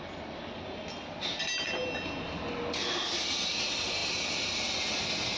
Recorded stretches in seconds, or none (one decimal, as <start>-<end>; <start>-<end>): 0.0-5.4